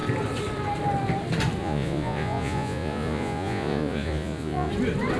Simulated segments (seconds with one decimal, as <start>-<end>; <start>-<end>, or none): 1.6-4.7